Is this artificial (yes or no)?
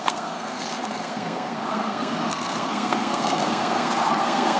yes